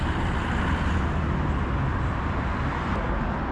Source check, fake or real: real